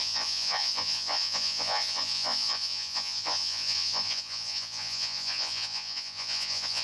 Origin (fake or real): fake